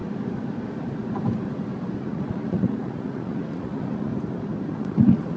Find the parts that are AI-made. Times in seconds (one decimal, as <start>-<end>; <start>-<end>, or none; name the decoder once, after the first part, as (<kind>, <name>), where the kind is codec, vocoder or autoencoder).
2.0-4.1 (vocoder, Vocos); 4.7-5.4